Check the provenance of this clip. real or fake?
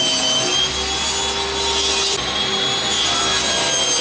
real